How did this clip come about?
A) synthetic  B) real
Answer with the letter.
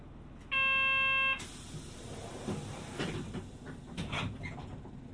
B